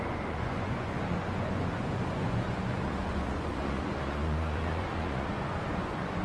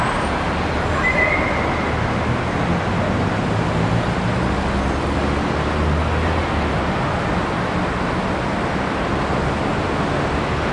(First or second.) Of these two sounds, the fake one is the first